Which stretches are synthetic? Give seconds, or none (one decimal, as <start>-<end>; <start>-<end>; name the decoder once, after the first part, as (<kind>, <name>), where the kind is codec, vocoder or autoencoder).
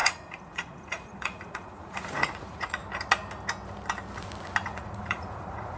0.0-2.8 (vocoder, Vocos); 4.6-5.8